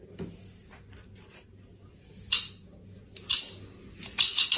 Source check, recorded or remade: recorded